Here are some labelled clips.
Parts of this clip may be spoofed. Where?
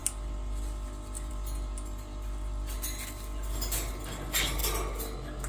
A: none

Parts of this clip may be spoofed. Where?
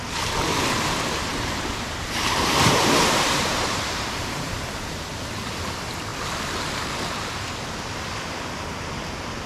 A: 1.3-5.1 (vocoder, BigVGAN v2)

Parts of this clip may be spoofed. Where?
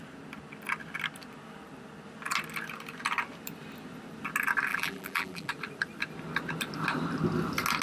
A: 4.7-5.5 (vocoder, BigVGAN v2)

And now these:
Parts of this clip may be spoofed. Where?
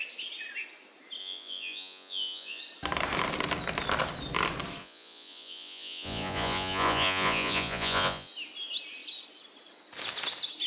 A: 1.2-2.6 (vocoder, Vocos); 4.8-8.3